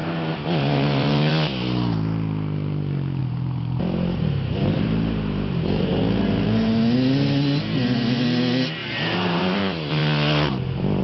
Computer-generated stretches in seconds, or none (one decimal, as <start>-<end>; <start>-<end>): 0.0-1.3; 3.2-6.0; 8.8-9.6